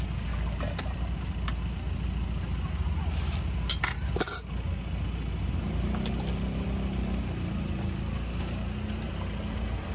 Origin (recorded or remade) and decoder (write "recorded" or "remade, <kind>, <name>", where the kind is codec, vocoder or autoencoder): recorded